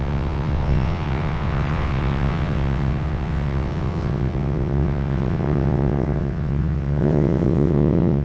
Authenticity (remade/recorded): remade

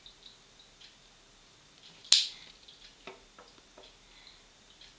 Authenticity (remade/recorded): recorded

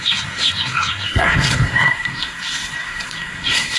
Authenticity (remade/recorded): remade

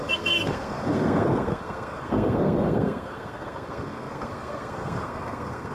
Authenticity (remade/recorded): remade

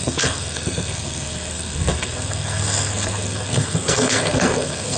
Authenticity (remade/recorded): remade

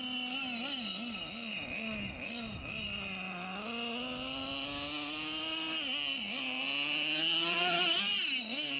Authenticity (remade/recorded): recorded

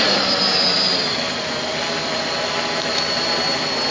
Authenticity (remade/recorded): recorded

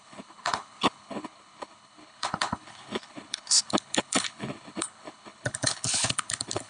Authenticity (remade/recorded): remade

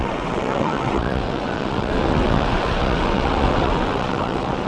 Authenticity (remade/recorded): remade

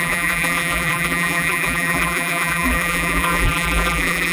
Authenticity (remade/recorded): remade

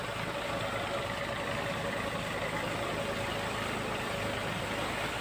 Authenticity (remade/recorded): recorded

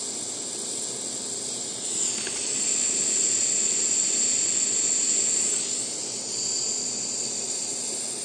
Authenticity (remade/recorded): recorded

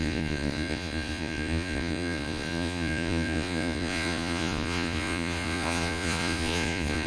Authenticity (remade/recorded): remade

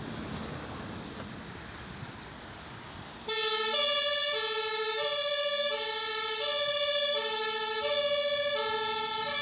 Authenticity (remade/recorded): recorded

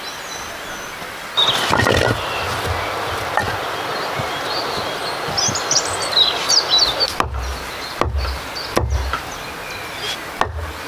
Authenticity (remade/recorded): recorded